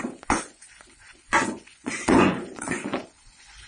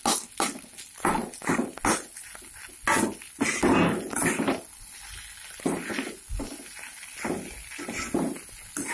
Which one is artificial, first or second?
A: first